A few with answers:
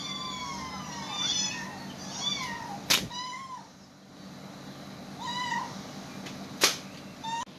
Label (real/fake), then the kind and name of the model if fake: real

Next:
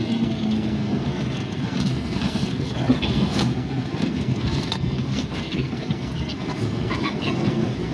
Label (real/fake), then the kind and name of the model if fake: fake, codec, SNAC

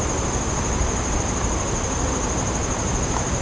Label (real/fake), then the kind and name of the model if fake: real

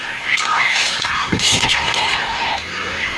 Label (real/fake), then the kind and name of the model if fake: fake, codec, SNAC